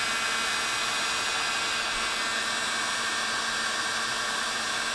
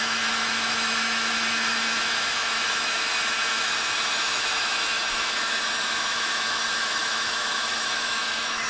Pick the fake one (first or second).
second